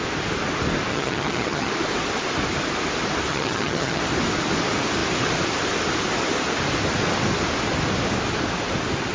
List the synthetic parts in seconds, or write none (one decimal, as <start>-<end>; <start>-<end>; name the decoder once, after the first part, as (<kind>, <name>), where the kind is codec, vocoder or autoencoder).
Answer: 0.9-1.7 (vocoder, HiFi-GAN); 3.3-4.0